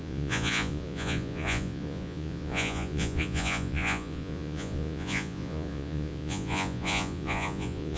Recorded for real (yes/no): no